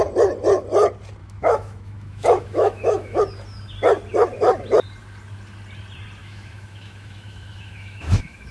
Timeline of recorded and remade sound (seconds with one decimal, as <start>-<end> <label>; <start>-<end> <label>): 0.0-1.2 recorded; 1.2-3.2 remade; 3.2-6.2 recorded; 6.2-8.5 remade